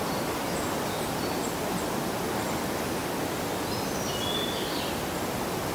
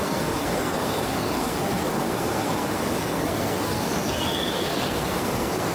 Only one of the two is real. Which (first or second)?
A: first